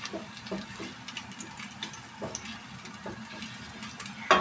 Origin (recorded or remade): recorded